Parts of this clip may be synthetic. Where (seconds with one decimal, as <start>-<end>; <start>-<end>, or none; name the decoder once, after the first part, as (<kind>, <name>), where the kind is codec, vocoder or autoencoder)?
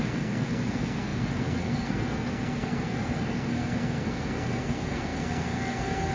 0.0-6.1 (codec, SNAC)